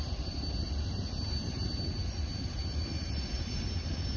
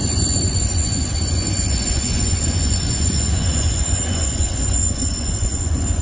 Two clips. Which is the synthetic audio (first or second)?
second